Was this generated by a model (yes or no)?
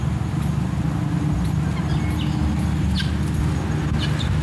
no